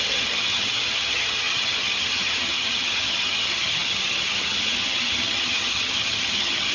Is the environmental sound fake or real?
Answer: fake